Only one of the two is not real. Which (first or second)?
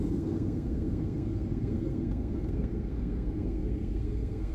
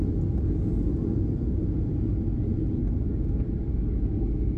first